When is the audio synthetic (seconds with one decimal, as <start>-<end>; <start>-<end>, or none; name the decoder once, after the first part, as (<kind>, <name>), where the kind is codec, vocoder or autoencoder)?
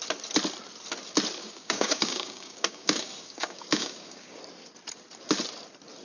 1.4-4.4 (codec, DAC)